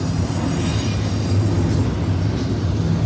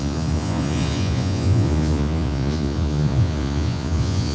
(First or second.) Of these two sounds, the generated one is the second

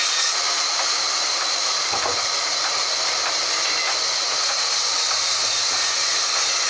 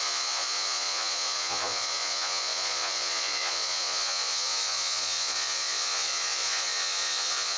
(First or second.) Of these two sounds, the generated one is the second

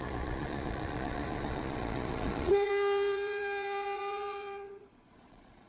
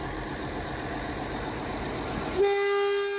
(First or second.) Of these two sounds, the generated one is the first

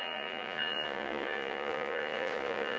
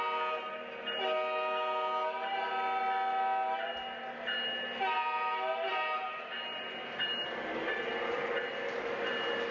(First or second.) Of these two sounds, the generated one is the first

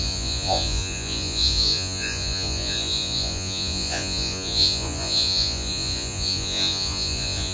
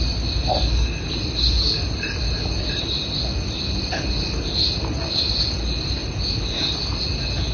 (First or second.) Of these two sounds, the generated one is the first